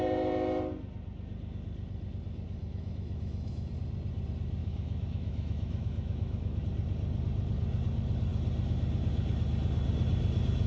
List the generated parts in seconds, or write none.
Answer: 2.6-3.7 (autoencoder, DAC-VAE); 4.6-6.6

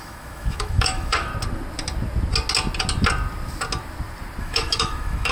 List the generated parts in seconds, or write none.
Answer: 0.0-1.3 (autoencoder, DAC-VAE); 4.4-5.3

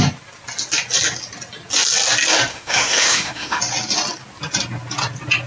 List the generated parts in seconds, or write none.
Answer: 2.5-3.6 (autoencoder, DAC-VAE)

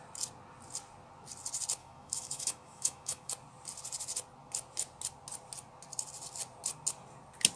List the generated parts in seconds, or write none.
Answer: 1.8-3.3 (autoencoder, DAC-VAE)

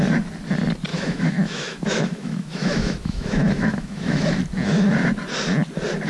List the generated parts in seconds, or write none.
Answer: 0.9-4.4 (autoencoder, DAC-VAE)

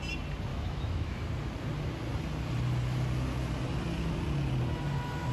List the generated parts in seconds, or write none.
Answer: 0.5-1.2 (autoencoder, DAC-VAE)

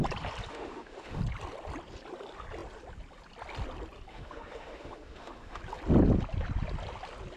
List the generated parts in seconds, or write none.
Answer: 0.5-1.2 (autoencoder, DAC-VAE); 4.1-5.6

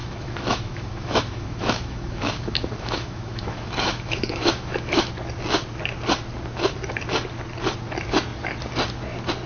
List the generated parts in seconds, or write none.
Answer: 0.0-5.1 (autoencoder, DAC-VAE)